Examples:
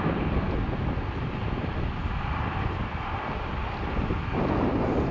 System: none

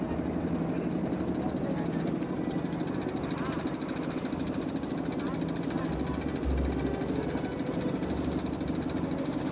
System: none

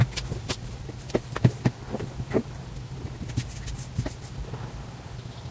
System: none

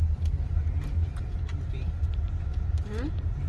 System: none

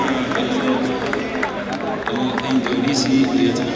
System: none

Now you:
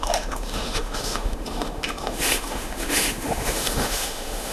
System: autoencoder, DAC-VAE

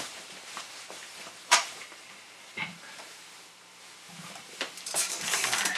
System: vocoder, BigVGAN v2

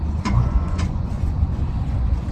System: vocoder, Vocos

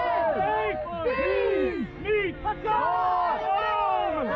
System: none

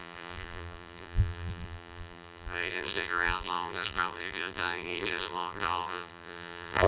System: vocoder, BigVGAN v2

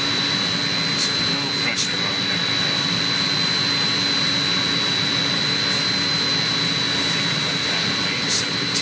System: none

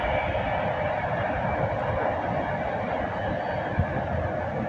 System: none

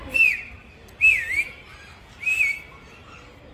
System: none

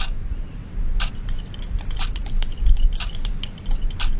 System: none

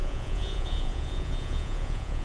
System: vocoder, Vocos